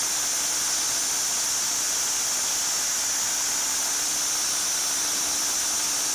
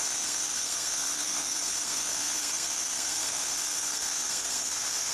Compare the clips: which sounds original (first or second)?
first